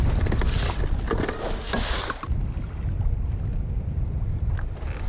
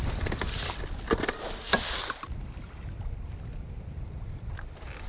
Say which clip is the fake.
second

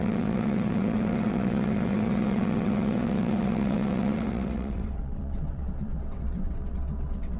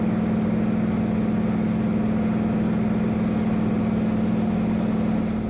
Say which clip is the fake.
first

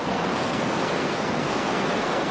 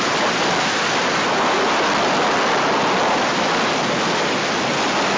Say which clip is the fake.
first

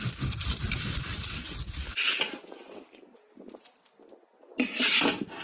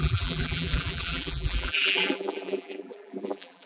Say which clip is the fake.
second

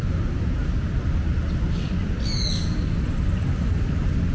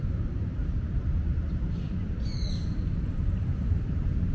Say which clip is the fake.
second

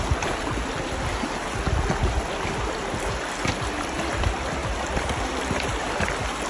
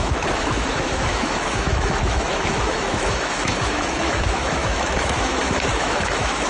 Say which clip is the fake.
second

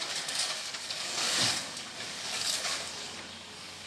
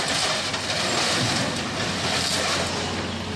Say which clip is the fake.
first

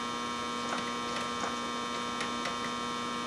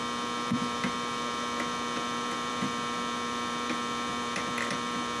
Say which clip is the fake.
second